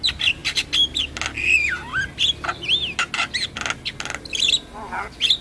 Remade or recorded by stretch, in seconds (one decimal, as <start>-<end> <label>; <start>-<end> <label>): 0.0-5.4 recorded